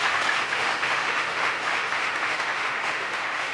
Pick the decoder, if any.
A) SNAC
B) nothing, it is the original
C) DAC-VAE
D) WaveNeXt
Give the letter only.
C